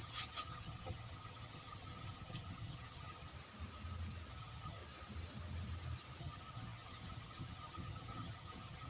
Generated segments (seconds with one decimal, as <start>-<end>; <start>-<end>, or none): 0.0-3.3; 4.3-4.8; 6.2-8.9